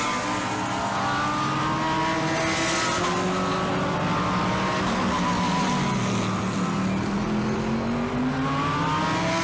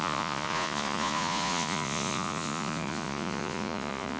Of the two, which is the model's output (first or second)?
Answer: second